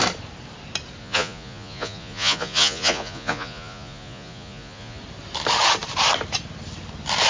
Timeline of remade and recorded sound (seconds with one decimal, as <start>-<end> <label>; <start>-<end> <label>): 0.0-1.0 recorded; 1.0-5.0 remade; 5.0-7.3 recorded